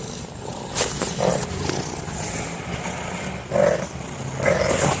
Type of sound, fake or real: real